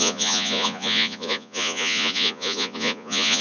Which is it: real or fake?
fake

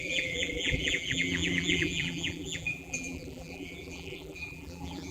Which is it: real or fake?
fake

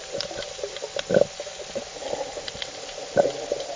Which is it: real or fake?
real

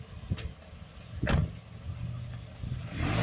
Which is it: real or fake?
real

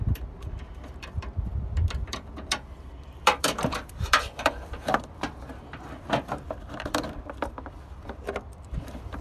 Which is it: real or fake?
fake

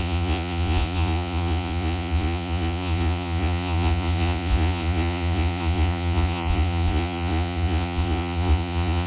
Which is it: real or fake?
fake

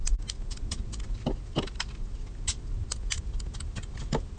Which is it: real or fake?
real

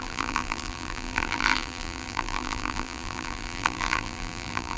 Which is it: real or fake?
fake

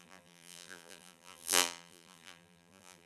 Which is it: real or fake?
fake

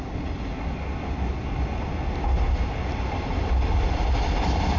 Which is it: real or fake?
real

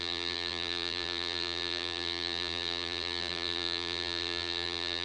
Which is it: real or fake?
fake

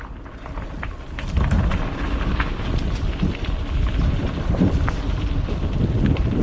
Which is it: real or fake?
real